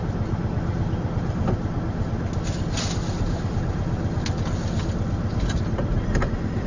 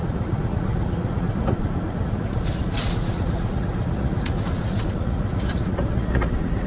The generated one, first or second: second